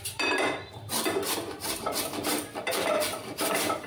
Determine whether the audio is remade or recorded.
remade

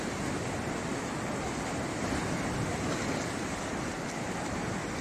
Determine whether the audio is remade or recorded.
recorded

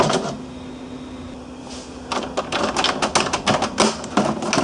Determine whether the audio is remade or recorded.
recorded